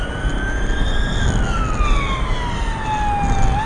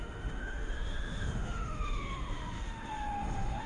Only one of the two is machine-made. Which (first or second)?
second